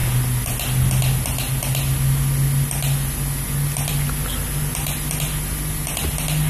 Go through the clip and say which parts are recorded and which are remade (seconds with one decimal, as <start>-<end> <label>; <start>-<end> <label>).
0.0-6.5 recorded